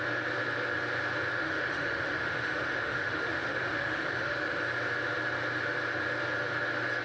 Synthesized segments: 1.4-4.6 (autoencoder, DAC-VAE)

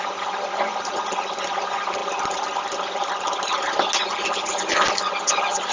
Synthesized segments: none

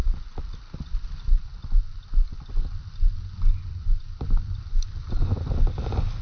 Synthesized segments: none

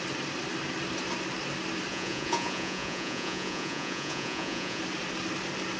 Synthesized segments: 1.9-4.8 (vocoder, Vocos)